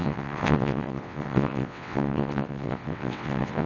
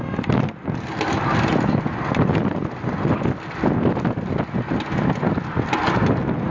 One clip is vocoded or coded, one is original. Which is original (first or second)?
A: second